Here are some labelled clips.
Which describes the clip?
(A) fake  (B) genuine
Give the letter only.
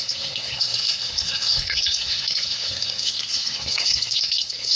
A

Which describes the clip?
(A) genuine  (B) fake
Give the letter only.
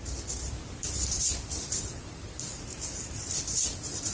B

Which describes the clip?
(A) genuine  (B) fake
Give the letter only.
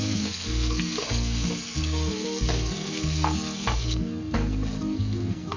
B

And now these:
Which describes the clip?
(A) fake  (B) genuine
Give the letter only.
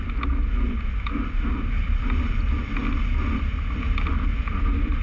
B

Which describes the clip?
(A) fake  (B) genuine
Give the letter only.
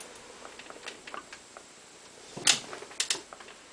B